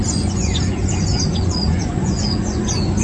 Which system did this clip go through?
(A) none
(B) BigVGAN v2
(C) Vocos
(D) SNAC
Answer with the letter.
C